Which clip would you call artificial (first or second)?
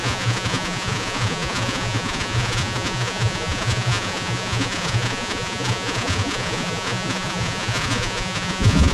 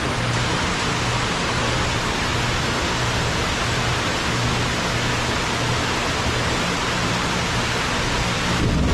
first